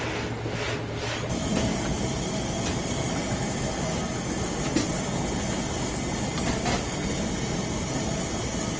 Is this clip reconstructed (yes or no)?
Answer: no